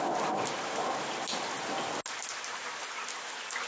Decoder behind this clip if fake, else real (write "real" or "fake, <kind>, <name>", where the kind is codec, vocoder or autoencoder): real